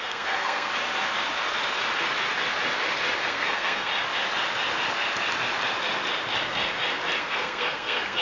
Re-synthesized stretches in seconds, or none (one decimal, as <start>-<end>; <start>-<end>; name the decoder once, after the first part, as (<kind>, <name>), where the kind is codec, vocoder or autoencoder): 0.0-0.7 (codec, SNAC); 3.3-3.9; 7.2-8.2